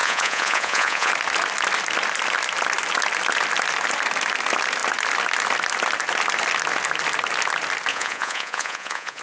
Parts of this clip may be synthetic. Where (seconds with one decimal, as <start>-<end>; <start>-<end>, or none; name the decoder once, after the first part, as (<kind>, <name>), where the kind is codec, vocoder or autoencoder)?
0.0-1.1 (vocoder, Vocos); 7.9-9.2

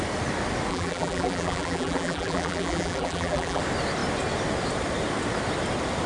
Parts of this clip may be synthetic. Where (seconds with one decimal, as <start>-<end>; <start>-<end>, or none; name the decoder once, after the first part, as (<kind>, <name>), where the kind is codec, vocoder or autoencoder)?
0.7-3.6 (vocoder, BigVGAN v2)